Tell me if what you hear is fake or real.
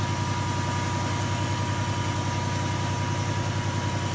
real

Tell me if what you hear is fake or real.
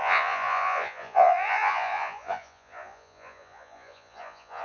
fake